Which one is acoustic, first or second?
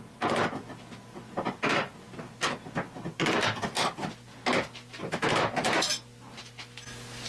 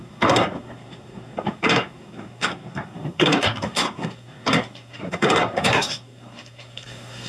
first